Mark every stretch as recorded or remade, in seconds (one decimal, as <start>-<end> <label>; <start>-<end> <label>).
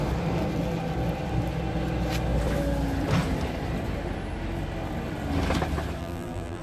0.0-6.0 recorded; 6.0-6.6 remade